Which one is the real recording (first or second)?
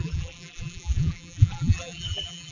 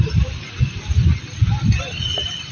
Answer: second